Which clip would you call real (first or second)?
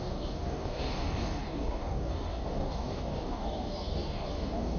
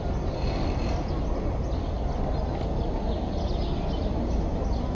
second